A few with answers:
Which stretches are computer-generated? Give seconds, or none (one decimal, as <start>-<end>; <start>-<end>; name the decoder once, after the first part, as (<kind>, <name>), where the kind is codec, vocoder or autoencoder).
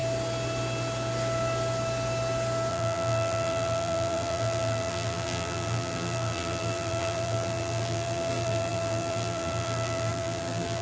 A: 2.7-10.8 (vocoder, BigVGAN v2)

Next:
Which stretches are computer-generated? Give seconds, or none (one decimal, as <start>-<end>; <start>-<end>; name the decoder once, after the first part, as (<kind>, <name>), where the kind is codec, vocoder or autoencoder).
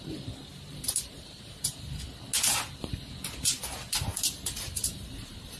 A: 0.5-2.0 (vocoder, BigVGAN v2); 4.1-5.6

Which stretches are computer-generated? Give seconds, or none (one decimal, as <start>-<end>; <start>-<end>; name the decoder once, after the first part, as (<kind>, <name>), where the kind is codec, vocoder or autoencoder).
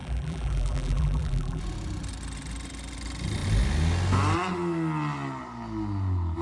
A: 0.0-1.6 (vocoder, BigVGAN v2)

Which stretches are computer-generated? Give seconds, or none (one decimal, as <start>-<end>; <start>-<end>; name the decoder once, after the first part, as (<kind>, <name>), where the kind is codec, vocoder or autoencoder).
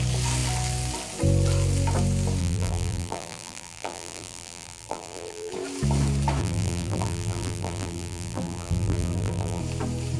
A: 2.4-5.5 (vocoder, BigVGAN v2); 6.4-9.6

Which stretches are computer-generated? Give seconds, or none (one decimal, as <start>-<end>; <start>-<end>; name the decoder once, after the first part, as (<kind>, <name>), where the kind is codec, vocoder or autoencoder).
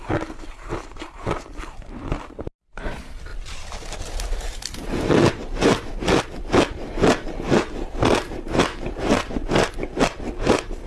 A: 0.0-3.3 (vocoder, BigVGAN v2); 5.1-10.9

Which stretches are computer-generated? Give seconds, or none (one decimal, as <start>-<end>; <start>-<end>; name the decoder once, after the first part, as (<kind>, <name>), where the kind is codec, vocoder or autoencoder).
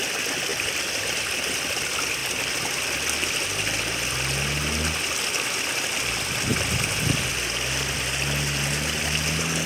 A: 0.5-1.3 (vocoder, BigVGAN v2)